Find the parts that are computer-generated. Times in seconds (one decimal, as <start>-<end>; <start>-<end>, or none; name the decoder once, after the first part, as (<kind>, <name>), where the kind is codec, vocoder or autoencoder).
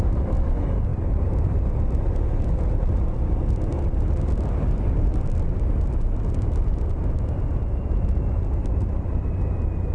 5.1-6.3 (vocoder, BigVGAN v2)